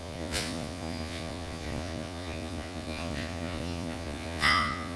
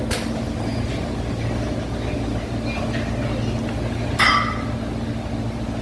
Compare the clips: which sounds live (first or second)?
second